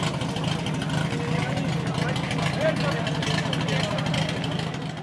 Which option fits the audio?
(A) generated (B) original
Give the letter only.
B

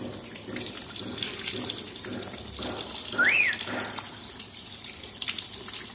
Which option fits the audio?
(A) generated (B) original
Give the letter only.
B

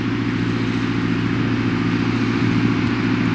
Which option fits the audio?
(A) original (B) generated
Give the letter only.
A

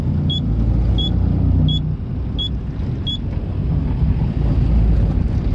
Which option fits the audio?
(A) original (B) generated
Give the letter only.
A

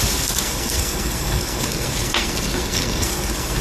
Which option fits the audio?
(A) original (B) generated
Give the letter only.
B